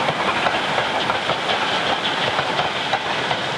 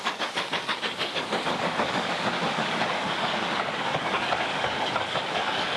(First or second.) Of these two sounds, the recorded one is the first